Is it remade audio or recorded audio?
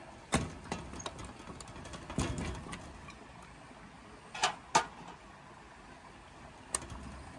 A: recorded